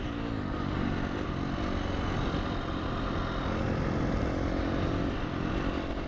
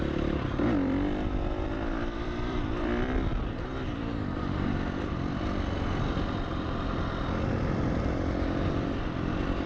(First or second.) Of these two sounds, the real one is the first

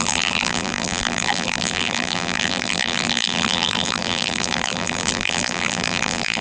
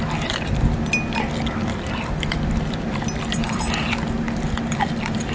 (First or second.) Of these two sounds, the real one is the second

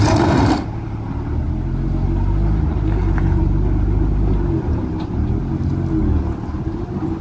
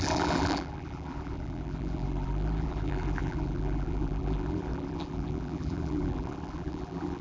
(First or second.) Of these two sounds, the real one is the first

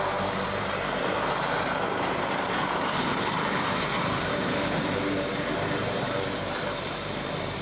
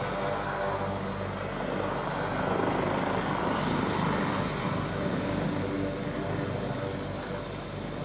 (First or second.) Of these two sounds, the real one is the second